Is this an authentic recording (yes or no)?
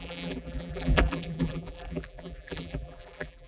no